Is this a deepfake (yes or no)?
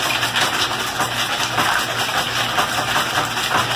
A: no